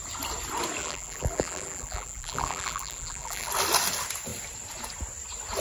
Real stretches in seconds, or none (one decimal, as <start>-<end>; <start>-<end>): 0.0-0.8; 3.5-5.6